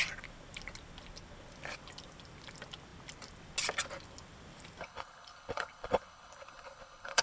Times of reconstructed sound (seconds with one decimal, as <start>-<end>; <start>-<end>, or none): 4.8-7.2